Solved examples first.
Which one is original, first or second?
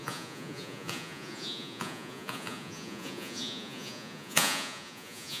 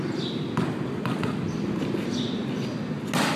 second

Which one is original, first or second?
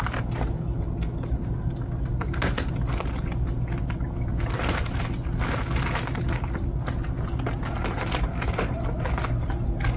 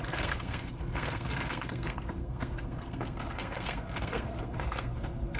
first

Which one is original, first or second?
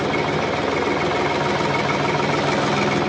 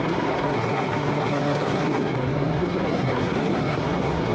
first